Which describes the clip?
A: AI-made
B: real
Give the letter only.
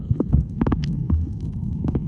A